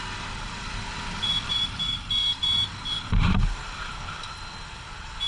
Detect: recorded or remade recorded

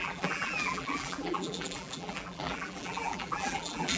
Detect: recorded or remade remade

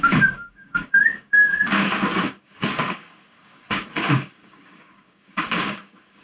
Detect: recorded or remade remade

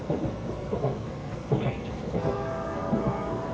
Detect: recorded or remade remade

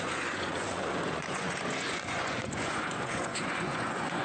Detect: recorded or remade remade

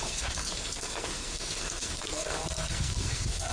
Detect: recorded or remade remade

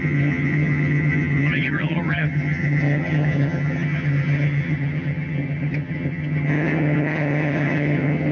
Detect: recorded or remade remade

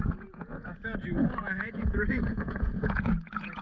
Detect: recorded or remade remade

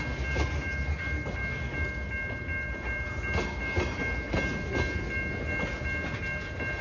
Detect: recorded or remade recorded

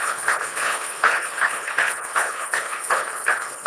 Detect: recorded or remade remade